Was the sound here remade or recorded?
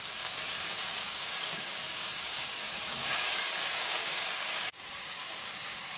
remade